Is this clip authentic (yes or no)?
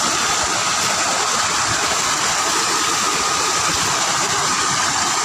yes